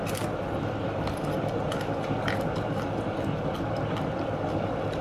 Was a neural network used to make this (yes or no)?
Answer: no